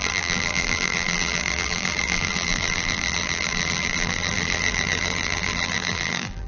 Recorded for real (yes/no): no